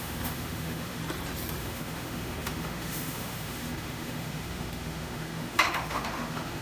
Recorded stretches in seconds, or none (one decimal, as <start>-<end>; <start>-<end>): 1.0-1.6